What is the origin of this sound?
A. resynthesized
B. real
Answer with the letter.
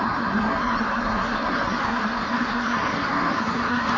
A